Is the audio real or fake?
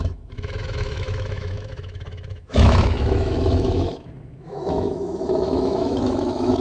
fake